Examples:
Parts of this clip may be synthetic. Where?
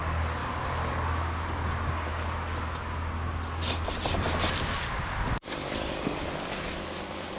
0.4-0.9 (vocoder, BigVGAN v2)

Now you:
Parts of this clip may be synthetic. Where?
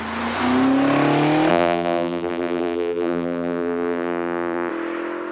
1.5-4.7 (vocoder, BigVGAN v2)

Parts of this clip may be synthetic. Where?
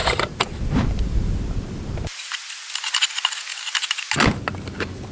0.0-3.1 (vocoder, BigVGAN v2); 3.5-4.0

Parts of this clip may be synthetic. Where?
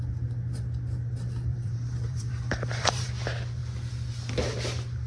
1.5-3.1 (vocoder, BigVGAN v2)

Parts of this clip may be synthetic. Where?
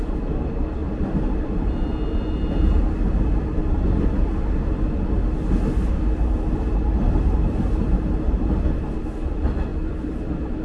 0.8-1.7 (vocoder, BigVGAN v2); 3.6-4.7; 9.7-10.2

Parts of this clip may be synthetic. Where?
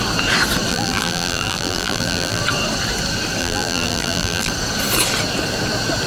0.7-2.4 (vocoder, BigVGAN v2); 3.4-4.5